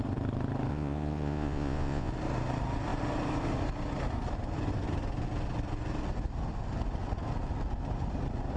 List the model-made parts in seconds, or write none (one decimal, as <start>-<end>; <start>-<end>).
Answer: 0.7-2.1